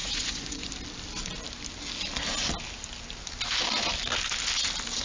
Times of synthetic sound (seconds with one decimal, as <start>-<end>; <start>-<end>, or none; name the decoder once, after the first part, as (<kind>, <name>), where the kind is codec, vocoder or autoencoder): 0.0-0.7 (vocoder, Vocos)